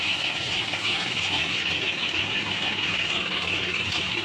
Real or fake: fake